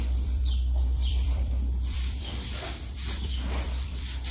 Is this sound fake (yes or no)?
yes